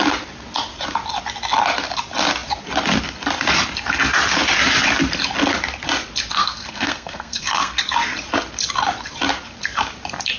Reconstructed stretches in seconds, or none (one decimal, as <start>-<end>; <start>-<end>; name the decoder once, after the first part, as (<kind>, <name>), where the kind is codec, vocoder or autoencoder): 6.3-7.8 (codec, SNAC)